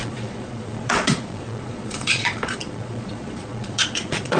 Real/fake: fake